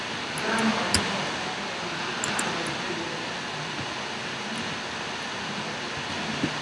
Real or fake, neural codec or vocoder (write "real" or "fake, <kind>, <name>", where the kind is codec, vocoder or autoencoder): real